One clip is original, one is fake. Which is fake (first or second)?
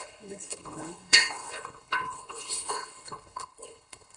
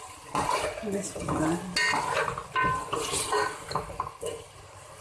first